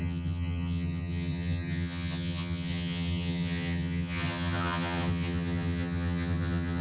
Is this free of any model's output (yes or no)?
no